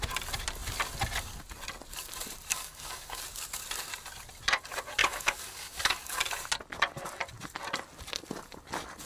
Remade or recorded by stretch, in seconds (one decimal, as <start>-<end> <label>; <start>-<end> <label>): 0.0-2.5 recorded; 2.5-3.2 remade; 3.2-5.0 recorded; 5.0-6.2 remade; 6.2-9.1 recorded